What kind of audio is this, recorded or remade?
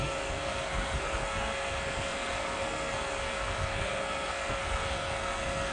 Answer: remade